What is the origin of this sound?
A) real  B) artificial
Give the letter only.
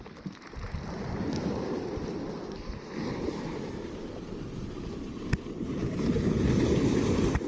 A